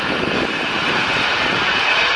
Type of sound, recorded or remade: recorded